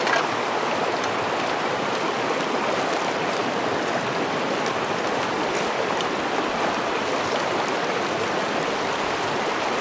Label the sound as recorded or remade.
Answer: recorded